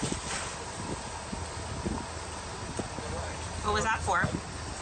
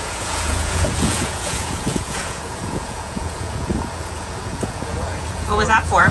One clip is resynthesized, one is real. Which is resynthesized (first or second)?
second